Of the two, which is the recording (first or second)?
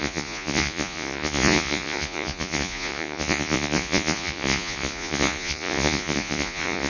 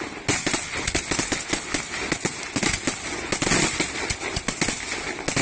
second